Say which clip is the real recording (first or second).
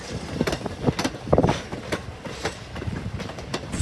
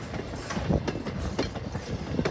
second